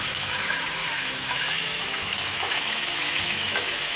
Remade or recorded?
remade